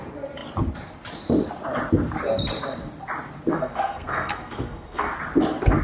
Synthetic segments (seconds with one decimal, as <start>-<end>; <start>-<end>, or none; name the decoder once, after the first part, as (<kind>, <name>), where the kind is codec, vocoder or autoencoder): 3.5-5.1 (codec, SNAC)